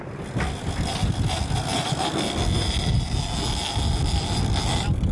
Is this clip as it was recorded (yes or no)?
yes